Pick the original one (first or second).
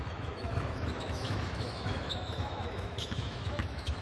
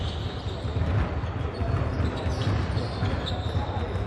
second